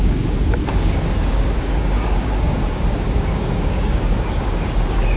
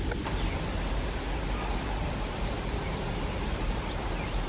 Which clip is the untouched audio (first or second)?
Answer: second